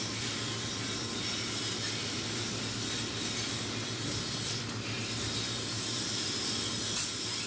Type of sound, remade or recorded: recorded